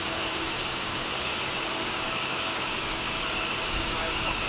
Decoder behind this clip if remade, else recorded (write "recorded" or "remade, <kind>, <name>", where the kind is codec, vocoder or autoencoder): remade, codec, DAC